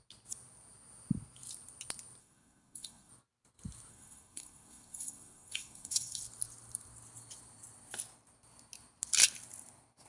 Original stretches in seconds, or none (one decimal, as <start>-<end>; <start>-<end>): 0.0-2.2; 3.1-3.9; 6.2-10.1